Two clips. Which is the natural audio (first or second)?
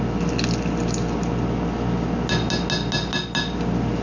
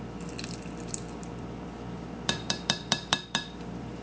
first